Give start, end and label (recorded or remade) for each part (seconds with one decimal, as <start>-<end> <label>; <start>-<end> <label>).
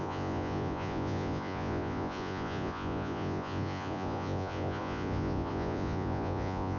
0.0-6.8 remade